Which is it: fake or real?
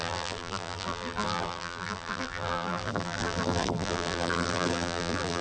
fake